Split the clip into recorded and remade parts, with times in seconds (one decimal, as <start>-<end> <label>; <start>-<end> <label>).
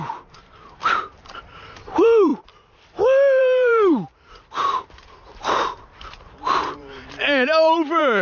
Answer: 0.0-2.3 remade; 2.3-3.4 recorded; 3.4-8.2 remade